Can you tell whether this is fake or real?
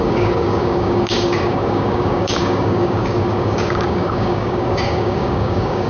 fake